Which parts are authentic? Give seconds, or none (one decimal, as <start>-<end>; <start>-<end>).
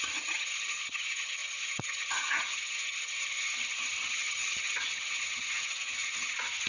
none